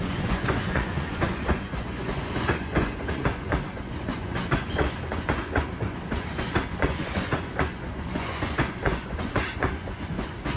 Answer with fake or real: fake